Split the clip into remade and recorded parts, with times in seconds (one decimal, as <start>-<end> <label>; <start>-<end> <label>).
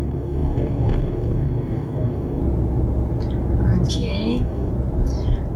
0.0-2.4 remade; 2.4-3.9 recorded; 3.9-4.7 remade; 4.7-5.6 recorded